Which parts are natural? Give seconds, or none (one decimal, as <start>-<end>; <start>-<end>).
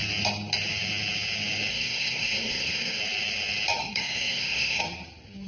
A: 0.0-1.7; 3.0-3.8; 4.8-5.5